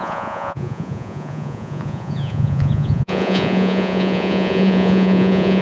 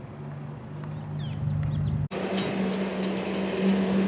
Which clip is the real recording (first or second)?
second